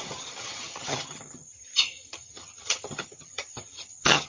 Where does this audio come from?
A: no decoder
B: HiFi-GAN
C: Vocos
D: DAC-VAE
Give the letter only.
B